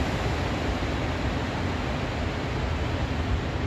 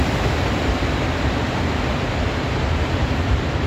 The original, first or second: first